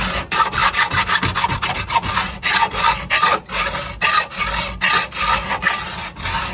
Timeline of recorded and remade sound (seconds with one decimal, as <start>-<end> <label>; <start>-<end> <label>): 0.0-6.5 recorded